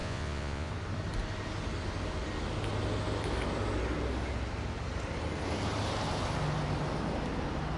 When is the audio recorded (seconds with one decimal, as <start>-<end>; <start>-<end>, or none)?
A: 0.7-7.8